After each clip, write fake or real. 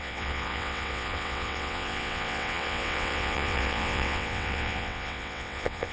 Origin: fake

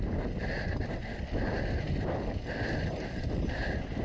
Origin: real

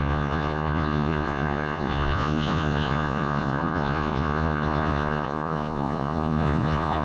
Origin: fake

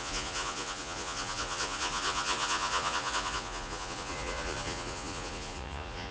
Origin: fake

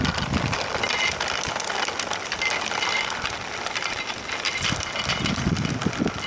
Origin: real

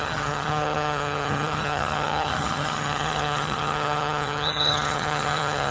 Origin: fake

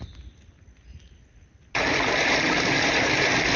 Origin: real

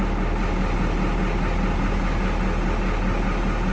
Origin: real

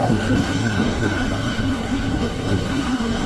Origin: fake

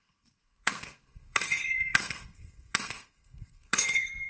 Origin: fake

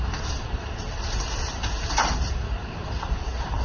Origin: fake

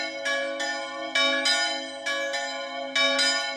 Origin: real